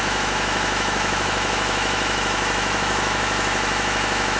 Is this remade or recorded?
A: remade